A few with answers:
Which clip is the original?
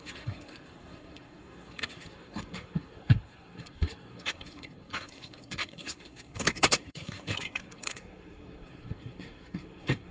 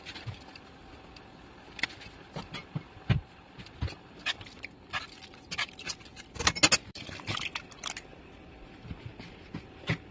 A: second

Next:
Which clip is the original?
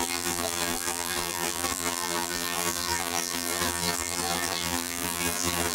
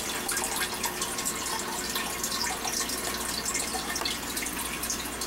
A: second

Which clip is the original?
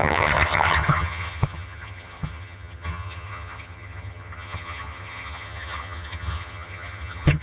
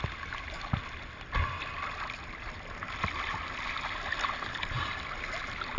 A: second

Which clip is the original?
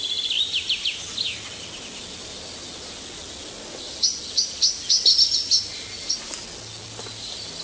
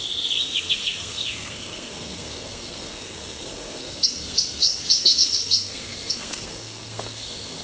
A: first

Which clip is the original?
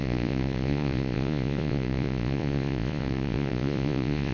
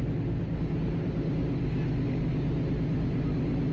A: second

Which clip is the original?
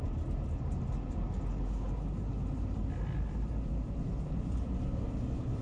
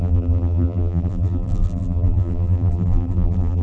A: first